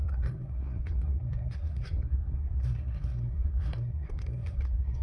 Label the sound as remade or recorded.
remade